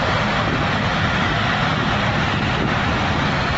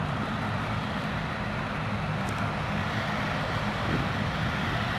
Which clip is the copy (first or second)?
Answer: second